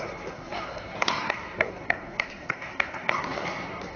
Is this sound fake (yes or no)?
yes